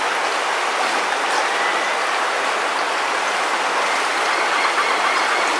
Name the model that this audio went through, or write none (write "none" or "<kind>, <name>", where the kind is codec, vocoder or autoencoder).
none